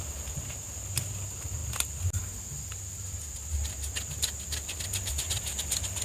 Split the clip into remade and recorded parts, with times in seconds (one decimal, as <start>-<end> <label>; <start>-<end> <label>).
0.0-6.0 recorded